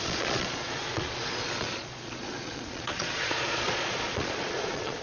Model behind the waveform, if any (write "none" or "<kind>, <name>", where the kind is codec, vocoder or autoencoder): vocoder, Vocos